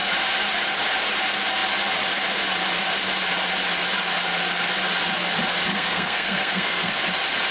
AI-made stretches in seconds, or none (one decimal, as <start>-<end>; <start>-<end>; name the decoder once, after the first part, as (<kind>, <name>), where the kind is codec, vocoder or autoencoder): 5.7-7.0 (codec, SNAC)